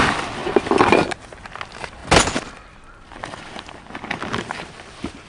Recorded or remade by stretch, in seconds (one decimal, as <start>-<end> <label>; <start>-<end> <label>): 0.0-5.3 recorded